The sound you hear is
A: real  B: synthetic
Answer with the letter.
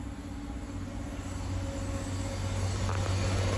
A